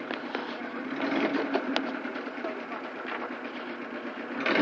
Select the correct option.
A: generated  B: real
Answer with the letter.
B